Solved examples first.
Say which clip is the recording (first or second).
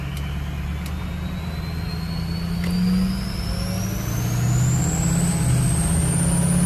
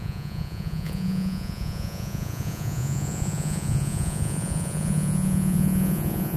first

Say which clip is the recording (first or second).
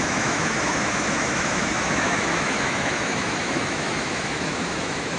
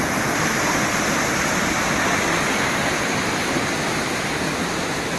second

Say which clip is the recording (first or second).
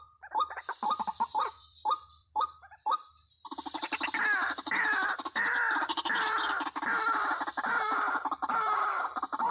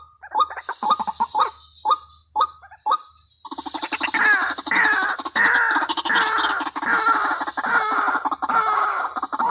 second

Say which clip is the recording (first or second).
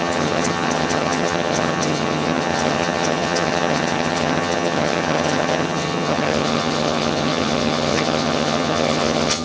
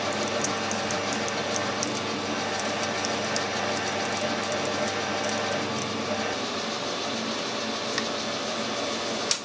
second